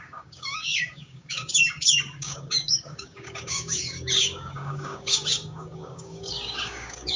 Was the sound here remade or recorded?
remade